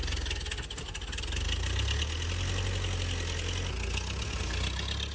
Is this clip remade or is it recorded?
recorded